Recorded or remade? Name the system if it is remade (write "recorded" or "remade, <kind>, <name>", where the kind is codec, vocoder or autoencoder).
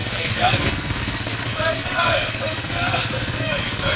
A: remade, codec, SNAC